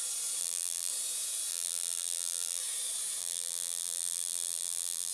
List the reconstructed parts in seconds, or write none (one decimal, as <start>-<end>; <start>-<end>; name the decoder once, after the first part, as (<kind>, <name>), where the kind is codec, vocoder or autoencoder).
0.4-0.9 (vocoder, BigVGAN v2); 1.5-2.6; 3.2-5.1